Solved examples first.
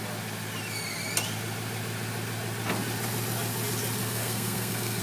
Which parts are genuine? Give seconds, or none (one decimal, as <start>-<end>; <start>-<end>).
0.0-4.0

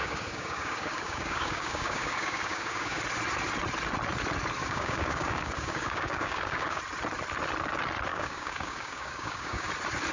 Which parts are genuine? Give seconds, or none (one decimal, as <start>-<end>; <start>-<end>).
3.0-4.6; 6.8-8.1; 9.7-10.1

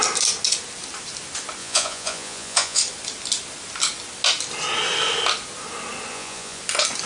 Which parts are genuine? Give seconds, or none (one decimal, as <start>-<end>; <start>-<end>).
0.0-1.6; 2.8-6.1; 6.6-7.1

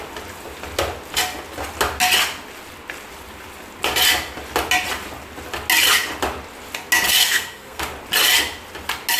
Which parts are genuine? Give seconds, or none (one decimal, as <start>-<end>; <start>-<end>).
0.0-7.2; 7.8-9.2

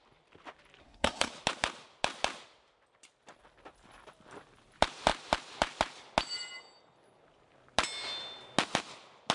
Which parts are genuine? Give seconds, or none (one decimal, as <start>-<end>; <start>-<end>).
0.0-0.8; 1.3-9.3

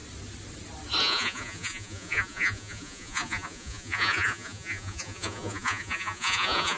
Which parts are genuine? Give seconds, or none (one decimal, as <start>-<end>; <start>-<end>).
0.0-1.0

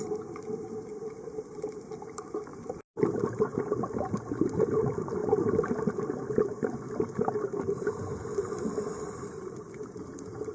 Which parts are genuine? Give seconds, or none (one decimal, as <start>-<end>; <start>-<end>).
0.0-0.9; 1.9-2.5; 3.4-5.2; 6.0-10.5

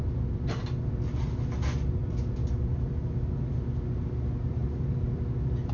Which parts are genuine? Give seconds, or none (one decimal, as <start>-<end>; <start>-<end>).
0.0-5.7